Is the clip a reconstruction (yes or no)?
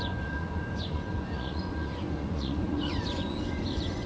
yes